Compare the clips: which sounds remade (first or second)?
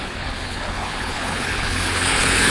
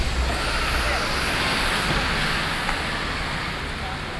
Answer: first